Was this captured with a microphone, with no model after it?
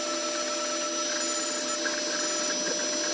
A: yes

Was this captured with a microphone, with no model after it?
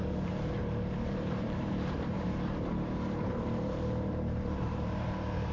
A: no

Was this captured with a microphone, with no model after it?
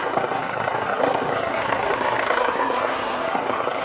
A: no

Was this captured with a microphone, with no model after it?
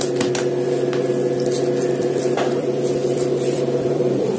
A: yes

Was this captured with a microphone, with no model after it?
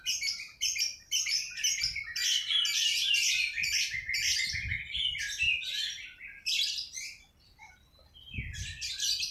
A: no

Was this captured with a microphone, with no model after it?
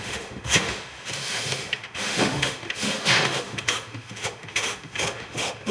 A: no